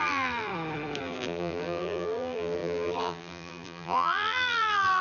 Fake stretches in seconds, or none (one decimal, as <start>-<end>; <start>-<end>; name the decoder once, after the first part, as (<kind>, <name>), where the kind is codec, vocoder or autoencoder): 0.0-0.5 (vocoder, BigVGAN v2); 1.0-5.0